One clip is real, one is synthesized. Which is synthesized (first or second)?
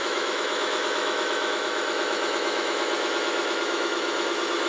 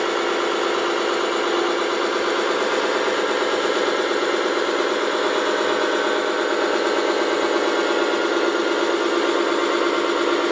first